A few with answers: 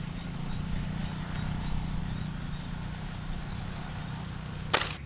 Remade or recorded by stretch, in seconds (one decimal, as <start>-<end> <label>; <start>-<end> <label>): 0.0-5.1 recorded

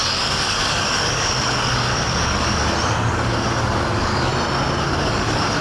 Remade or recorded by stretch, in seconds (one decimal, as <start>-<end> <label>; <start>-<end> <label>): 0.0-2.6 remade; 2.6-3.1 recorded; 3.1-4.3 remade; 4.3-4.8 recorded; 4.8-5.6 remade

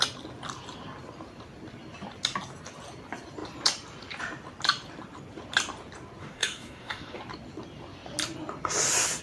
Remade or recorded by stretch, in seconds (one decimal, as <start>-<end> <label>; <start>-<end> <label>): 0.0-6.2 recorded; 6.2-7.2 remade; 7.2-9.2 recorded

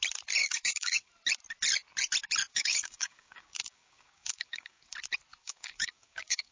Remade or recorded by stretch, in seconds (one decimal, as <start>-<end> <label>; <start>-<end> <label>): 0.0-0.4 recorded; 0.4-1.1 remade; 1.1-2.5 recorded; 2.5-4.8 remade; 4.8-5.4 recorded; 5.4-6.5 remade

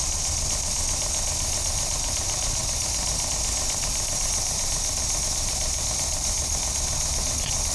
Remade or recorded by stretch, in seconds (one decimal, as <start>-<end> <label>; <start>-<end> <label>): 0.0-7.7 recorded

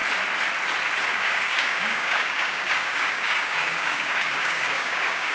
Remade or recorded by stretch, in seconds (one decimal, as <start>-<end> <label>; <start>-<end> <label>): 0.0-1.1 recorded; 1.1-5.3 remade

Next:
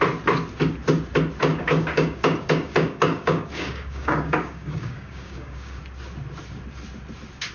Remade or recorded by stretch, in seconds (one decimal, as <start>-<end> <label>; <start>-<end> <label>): 0.0-1.5 recorded; 1.5-5.8 remade; 5.8-7.5 recorded

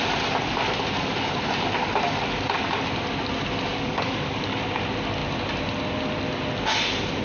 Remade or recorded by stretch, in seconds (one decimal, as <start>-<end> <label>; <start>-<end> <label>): 0.0-3.7 recorded; 3.7-4.6 remade; 4.6-7.2 recorded